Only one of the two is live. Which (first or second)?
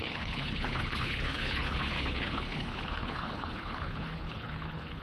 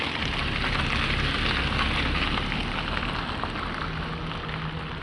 second